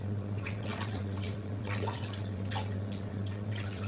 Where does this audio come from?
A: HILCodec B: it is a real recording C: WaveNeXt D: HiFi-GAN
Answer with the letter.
C